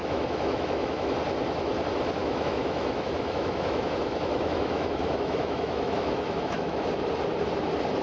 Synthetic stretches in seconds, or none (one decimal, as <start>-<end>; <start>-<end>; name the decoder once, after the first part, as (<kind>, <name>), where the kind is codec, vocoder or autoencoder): 0.0-1.1 (autoencoder, DAC-VAE); 2.2-6.9